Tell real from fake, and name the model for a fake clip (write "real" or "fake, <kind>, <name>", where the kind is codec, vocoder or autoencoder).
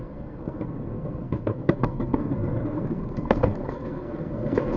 fake, codec, SNAC